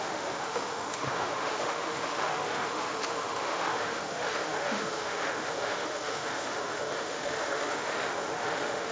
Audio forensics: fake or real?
fake